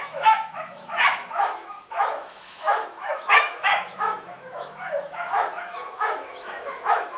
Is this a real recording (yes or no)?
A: no